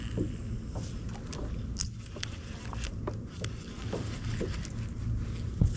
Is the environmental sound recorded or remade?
recorded